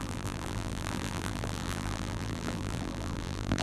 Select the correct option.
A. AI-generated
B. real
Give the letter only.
A